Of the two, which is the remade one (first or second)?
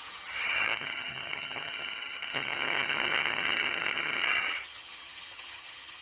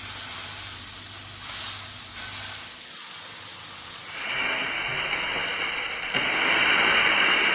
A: first